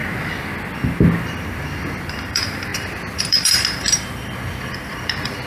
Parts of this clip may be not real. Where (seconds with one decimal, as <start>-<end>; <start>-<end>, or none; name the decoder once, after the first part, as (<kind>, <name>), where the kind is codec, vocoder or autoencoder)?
2.3-5.5 (vocoder, BigVGAN v2)